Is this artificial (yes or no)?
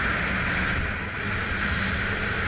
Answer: no